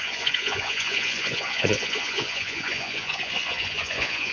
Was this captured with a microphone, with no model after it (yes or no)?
no